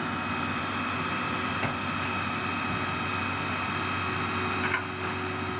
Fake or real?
real